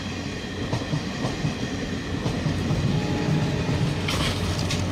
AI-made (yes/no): no